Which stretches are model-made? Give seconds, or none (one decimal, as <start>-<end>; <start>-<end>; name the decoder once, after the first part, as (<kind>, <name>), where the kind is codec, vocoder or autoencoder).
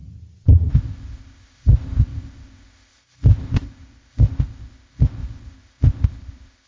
0.7-6.7 (codec, ZipCodec)